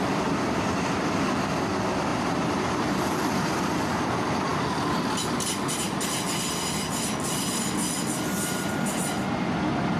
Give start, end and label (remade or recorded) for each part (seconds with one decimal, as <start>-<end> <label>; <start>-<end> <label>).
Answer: 0.0-2.1 recorded; 2.1-3.6 remade; 3.6-10.0 recorded